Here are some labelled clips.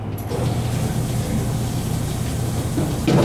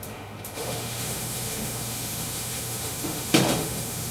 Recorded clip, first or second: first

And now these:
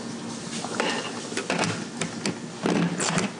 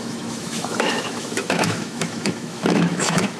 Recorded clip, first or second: first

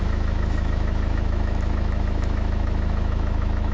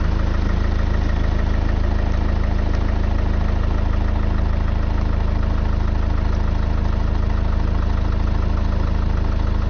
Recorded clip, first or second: second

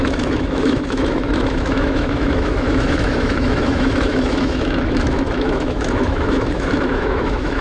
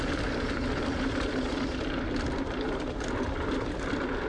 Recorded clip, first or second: second